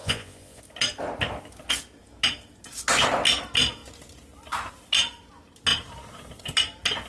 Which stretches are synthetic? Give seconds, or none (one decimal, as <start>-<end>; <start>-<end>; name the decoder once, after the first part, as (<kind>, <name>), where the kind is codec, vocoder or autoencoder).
0.0-0.6 (vocoder, Vocos)